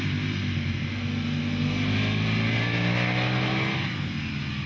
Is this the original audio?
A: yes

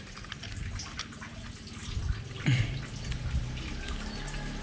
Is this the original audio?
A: yes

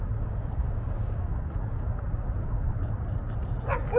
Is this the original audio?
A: yes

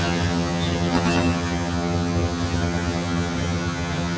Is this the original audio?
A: no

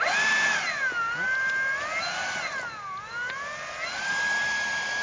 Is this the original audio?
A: yes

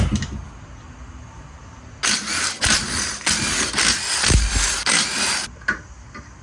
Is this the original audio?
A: yes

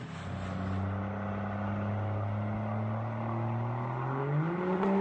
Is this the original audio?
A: yes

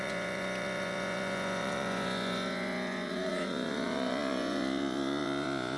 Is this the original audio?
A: no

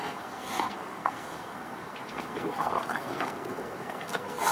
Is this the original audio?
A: no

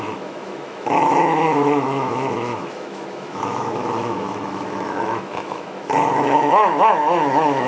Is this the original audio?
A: no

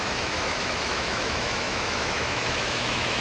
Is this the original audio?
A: no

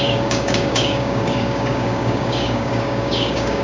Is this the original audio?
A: no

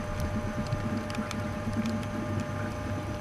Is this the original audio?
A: yes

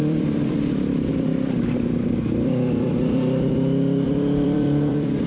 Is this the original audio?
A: no